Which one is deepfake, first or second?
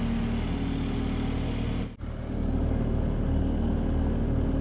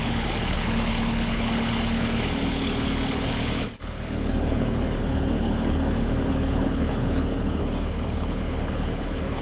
second